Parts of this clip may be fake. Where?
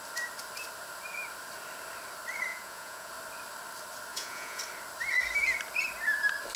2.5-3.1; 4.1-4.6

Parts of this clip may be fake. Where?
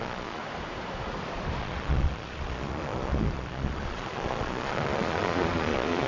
0.0-0.4; 1.6-6.1